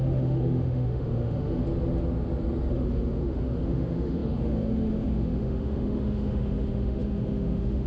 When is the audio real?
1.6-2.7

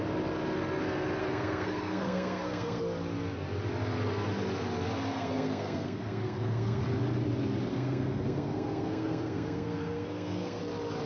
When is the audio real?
0.0-1.2; 2.8-5.1; 6.8-7.7; 10.6-11.1

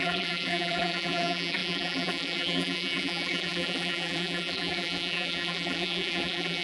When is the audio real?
none

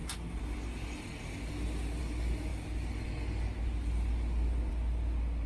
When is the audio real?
0.0-5.5

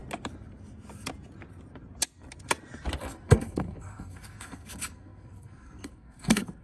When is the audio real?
0.0-3.0

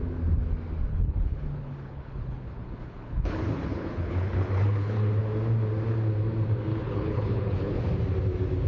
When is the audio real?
0.0-0.9; 5.2-6.7; 7.8-8.7

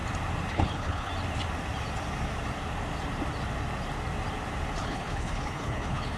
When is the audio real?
0.0-0.5; 1.1-4.8